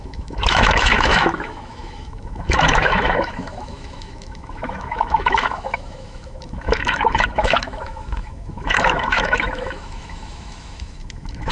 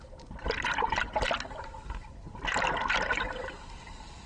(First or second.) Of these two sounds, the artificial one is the first